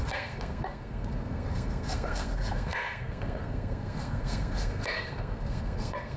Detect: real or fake fake